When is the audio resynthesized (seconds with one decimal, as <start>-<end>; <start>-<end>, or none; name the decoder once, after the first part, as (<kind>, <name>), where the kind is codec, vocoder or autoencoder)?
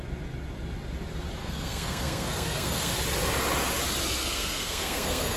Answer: 1.4-2.9 (codec, SNAC); 4.2-5.4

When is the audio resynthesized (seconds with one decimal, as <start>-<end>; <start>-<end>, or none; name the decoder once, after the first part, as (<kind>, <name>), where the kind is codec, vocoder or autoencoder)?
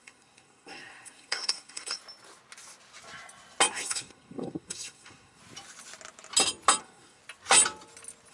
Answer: 0.0-2.0 (codec, SNAC); 3.7-5.4; 6.8-7.2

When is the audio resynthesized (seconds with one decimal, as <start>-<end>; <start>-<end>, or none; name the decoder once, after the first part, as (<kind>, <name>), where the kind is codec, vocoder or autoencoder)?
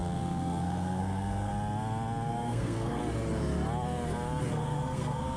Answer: 0.0-1.5 (codec, SNAC); 2.3-3.0; 4.5-5.4